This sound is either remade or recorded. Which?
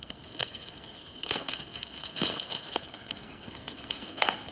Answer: remade